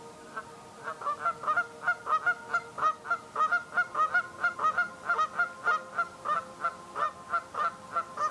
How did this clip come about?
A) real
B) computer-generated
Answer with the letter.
A